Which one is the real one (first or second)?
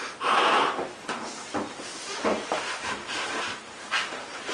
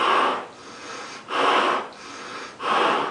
second